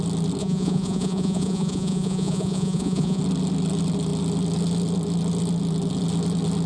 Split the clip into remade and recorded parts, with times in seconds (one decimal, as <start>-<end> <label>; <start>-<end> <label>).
0.0-0.4 recorded; 0.4-3.2 remade; 3.2-6.7 recorded